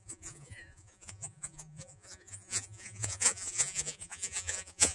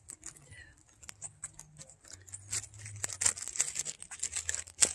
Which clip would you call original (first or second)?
second